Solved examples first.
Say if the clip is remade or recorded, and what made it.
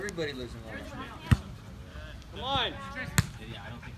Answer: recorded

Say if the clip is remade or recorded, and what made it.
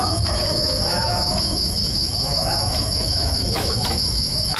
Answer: remade, autoencoder, DAC-VAE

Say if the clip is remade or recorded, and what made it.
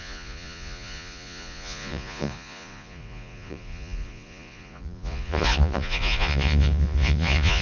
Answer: remade, vocoder, Vocos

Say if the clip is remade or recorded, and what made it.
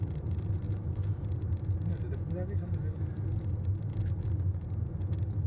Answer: recorded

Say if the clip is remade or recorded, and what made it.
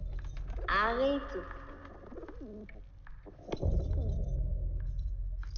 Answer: recorded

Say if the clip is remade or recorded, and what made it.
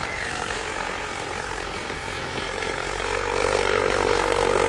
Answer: remade, codec, SNAC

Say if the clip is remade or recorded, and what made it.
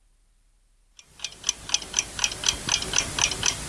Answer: recorded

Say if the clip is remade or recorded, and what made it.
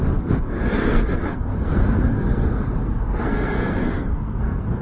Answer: remade, codec, SNAC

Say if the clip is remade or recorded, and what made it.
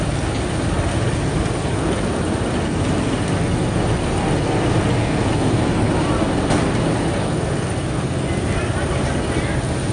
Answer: recorded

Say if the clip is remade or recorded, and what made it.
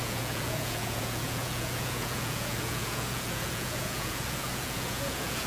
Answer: remade, vocoder, Vocos